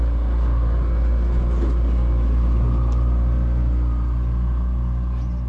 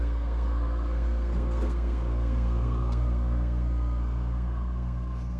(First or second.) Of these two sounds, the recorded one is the first